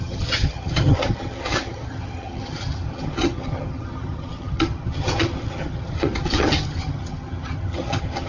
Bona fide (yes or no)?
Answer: no